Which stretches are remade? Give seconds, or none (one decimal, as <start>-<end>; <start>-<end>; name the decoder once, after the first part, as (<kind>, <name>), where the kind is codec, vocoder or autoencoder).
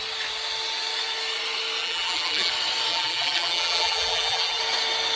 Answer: 1.8-2.5 (vocoder, BigVGAN v2); 2.9-4.6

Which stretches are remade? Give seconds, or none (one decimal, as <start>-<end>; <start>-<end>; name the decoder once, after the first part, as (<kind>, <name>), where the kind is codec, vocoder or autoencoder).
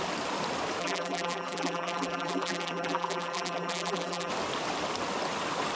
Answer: 0.8-4.3 (vocoder, BigVGAN v2)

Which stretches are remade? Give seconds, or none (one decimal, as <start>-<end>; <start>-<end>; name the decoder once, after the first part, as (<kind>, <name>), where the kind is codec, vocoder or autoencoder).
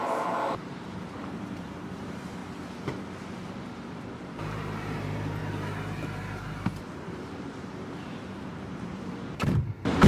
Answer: 0.0-2.4 (vocoder, BigVGAN v2); 3.0-5.4; 6.8-10.1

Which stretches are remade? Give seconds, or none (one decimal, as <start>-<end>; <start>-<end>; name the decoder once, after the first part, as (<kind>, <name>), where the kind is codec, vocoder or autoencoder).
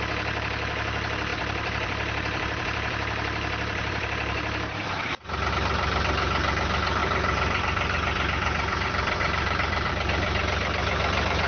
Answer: 1.3-5.5 (vocoder, BigVGAN v2); 7.0-9.9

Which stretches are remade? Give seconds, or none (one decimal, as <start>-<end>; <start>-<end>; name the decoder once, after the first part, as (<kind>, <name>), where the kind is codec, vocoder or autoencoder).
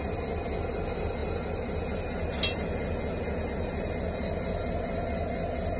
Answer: none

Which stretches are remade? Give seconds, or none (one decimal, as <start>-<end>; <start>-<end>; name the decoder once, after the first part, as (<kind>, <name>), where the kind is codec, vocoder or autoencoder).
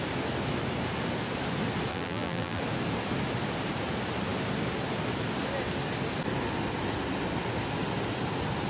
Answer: 1.9-2.6 (vocoder, BigVGAN v2)